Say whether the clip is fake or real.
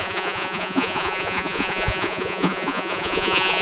fake